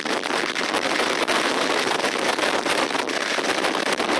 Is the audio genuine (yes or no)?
no